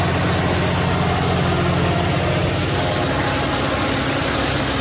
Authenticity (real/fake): real